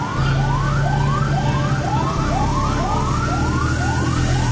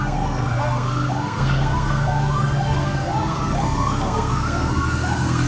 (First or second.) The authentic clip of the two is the first